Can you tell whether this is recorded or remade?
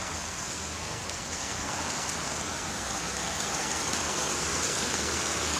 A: remade